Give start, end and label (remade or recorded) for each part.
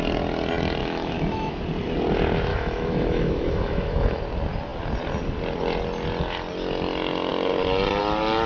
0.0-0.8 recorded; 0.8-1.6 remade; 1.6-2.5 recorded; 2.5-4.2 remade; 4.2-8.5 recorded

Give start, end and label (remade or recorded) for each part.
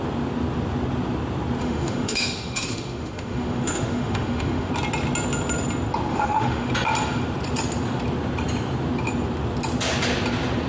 0.0-1.6 recorded; 1.6-4.7 remade; 4.7-6.1 recorded; 6.1-6.7 remade; 6.7-10.7 recorded